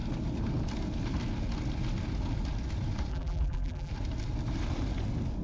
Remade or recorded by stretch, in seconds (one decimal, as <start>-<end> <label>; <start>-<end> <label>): 0.0-3.1 recorded; 3.1-3.9 remade; 3.9-5.4 recorded